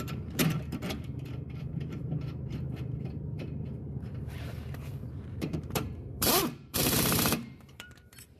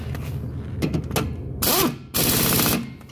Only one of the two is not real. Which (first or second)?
first